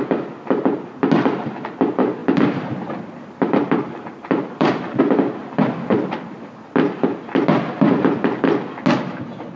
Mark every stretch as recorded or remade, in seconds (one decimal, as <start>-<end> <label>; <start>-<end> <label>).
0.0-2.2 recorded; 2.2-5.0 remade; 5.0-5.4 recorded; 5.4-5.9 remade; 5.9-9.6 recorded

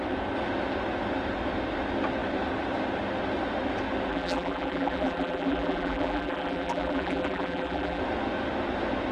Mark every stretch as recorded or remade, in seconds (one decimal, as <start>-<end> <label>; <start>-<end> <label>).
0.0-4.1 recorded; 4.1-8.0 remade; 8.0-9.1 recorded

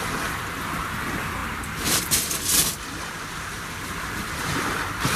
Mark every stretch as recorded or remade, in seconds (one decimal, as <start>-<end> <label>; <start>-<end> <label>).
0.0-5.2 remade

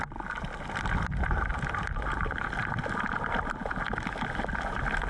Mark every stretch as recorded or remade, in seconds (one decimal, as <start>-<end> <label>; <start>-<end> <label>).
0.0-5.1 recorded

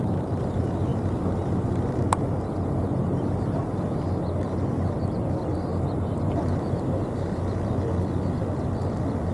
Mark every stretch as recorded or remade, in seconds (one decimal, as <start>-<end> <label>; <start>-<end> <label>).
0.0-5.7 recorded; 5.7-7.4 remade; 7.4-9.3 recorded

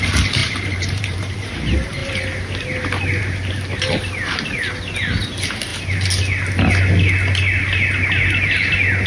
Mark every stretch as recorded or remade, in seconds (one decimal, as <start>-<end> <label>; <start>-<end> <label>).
0.0-0.4 recorded; 0.4-1.5 remade; 1.5-9.1 recorded

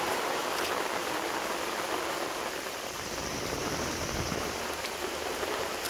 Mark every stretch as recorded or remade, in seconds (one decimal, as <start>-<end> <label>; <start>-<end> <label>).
0.0-0.4 remade; 0.4-3.3 recorded; 3.3-5.9 remade

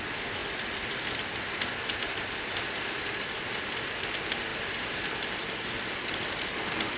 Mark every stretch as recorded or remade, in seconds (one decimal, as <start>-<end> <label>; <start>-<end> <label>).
0.0-4.5 recorded; 4.5-7.0 remade